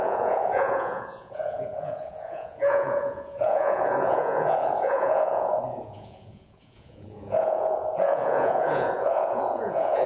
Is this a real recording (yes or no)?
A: no